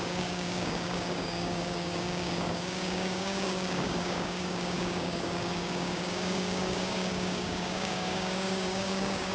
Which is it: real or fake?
fake